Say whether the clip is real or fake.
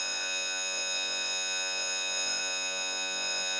fake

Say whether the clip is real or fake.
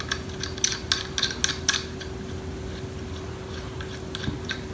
real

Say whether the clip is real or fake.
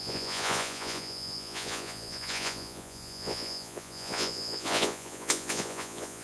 fake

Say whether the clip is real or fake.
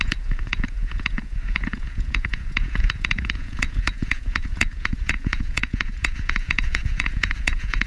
fake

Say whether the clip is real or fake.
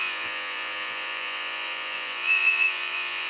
fake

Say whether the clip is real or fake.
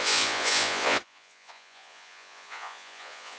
fake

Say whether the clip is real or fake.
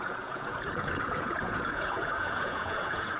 fake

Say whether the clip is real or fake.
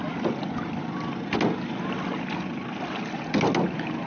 real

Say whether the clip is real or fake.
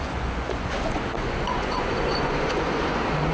fake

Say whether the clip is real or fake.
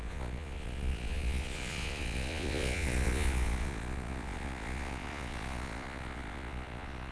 fake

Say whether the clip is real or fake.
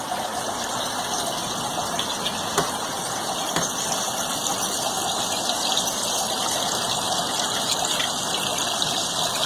real